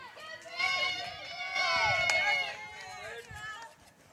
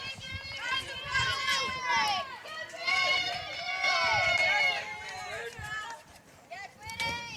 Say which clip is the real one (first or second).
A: first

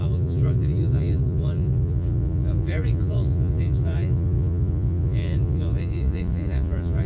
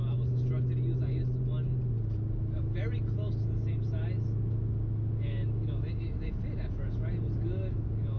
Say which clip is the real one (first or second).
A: second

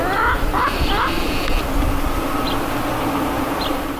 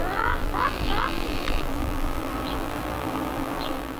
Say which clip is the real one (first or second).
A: first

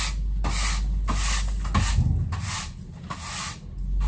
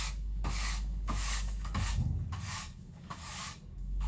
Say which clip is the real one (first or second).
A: first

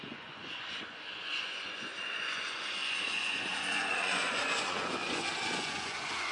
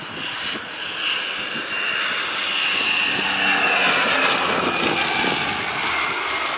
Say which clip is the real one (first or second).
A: second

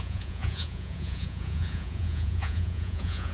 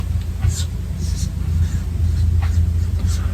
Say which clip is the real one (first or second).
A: second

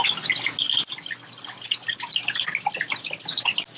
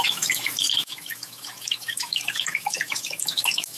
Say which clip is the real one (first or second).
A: first